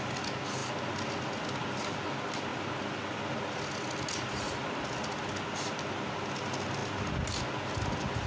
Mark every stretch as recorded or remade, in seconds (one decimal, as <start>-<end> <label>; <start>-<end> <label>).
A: 0.0-8.3 recorded